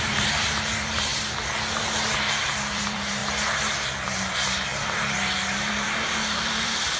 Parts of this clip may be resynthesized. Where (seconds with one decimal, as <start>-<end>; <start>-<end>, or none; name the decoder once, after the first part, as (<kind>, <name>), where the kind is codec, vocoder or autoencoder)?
0.0-1.1 (vocoder, BigVGAN v2); 2.2-3.2; 5.7-7.0